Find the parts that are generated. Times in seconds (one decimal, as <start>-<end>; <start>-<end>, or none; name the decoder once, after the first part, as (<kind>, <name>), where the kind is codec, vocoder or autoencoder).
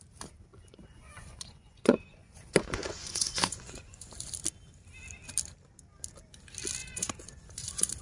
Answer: 0.5-4.1 (vocoder, Vocos); 6.8-8.0